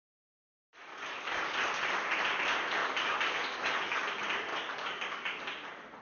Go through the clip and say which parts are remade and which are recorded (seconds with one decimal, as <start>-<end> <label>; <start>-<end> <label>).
0.0-0.9 recorded; 0.9-1.6 remade; 1.6-2.8 recorded; 2.8-4.0 remade; 4.0-4.5 recorded; 4.5-5.4 remade; 5.4-6.0 recorded